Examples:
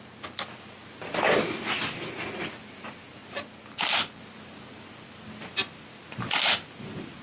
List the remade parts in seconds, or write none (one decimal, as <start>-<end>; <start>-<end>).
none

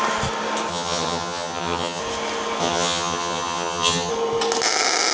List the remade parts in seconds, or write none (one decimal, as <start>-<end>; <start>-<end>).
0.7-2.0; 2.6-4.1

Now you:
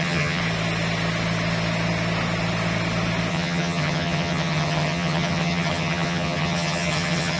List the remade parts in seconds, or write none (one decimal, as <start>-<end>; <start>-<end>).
0.0-0.4; 3.3-7.4

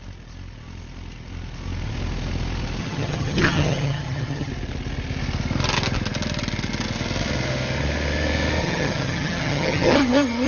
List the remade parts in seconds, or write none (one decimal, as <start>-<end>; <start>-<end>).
2.8-4.5; 8.6-10.5

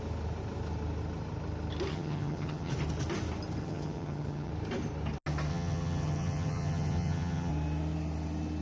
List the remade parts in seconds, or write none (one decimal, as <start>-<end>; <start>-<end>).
1.9-2.7; 3.6-4.5; 5.5-7.5